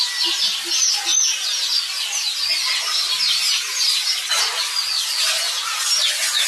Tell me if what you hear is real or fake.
real